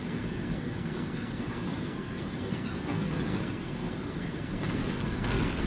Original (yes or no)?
no